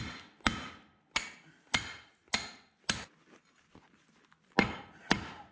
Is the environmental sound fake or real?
real